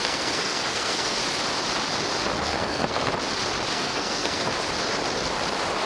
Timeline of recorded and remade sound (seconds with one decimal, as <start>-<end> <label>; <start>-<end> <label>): 0.0-1.2 remade; 1.2-2.4 recorded; 2.4-3.1 remade; 3.1-3.7 recorded; 3.7-4.5 remade; 4.5-5.9 recorded

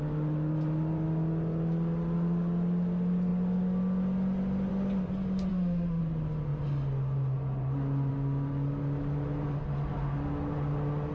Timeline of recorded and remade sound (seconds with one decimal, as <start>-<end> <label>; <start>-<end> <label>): 0.0-5.5 recorded; 5.5-6.0 remade; 6.0-11.1 recorded

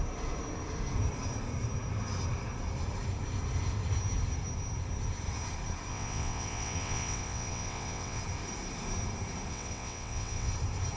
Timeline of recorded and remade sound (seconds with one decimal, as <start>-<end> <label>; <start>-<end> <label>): 0.0-5.9 recorded; 5.9-8.2 remade; 8.2-9.5 recorded; 9.5-10.5 remade; 10.5-11.0 recorded